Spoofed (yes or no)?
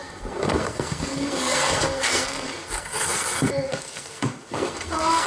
yes